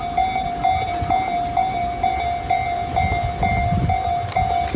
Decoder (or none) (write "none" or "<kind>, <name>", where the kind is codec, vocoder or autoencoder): none